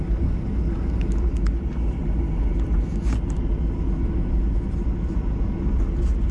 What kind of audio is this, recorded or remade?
recorded